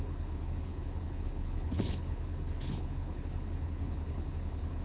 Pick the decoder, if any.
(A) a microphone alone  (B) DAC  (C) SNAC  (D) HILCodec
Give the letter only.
D